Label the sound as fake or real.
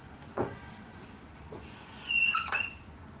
fake